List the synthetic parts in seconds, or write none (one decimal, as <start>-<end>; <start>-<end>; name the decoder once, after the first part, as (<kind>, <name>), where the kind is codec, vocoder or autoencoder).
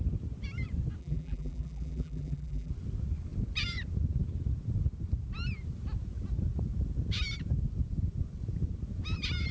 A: 1.0-2.7 (vocoder, BigVGAN v2)